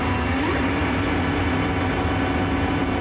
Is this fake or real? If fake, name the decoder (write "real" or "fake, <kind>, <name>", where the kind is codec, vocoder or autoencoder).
real